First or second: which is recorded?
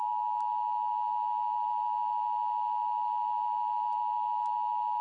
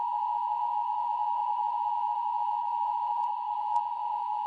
first